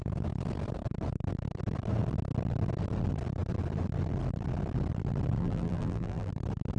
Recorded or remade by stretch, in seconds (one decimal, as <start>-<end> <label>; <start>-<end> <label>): 0.0-5.4 recorded; 5.4-6.3 remade; 6.3-6.8 recorded